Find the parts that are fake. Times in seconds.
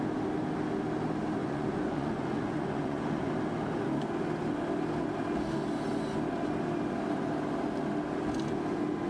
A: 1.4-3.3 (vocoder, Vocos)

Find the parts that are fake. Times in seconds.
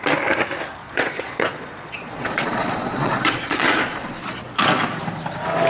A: 0.8-4.2 (vocoder, Vocos)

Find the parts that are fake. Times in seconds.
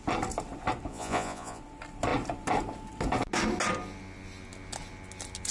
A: 0.9-1.6 (vocoder, Vocos)